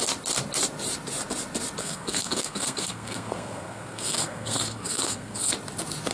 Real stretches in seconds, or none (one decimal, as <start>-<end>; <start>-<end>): 0.0-1.8; 5.5-6.1